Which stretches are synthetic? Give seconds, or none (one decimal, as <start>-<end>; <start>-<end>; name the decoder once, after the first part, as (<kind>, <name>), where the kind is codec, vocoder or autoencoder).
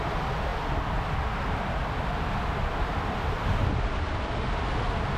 none